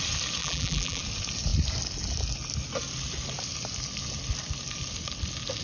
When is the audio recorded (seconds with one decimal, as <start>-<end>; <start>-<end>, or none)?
0.0-0.4; 1.0-5.6